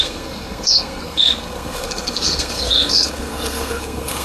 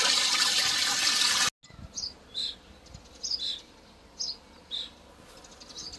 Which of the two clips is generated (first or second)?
first